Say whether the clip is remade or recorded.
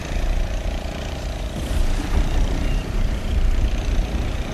remade